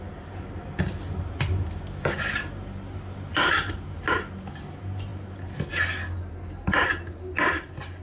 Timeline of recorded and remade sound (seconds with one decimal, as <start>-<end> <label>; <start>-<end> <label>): 0.0-8.0 recorded